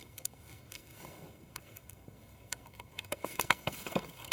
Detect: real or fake fake